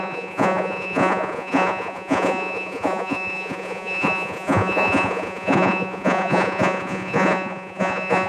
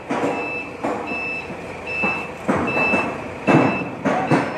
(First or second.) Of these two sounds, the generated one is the first